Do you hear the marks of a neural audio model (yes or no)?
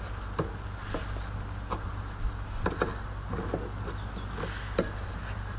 no